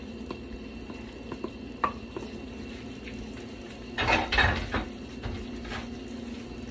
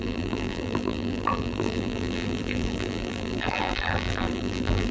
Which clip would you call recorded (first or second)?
first